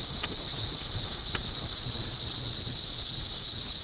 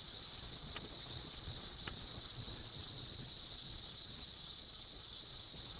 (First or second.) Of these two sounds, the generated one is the second